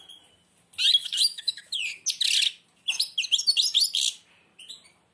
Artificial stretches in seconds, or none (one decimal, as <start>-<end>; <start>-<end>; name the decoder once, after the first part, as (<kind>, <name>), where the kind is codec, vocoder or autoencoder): 1.0-1.8 (autoencoder, DAC-VAE)